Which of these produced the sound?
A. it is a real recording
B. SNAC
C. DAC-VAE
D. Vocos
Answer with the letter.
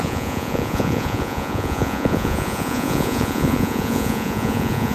D